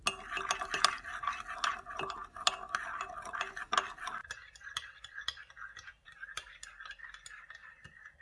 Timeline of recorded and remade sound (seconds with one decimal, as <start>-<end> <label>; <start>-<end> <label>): 0.0-4.2 recorded; 4.2-8.2 remade